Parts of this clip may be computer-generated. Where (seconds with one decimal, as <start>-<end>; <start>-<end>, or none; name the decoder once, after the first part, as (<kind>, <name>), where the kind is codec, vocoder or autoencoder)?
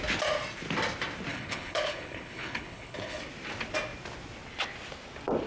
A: 1.3-3.2 (codec, HILCodec)